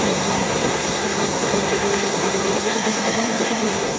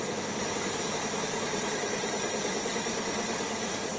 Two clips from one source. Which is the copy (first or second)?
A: first